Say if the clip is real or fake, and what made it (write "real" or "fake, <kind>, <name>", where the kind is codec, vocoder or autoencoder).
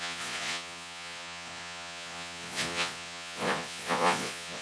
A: fake, vocoder, Vocos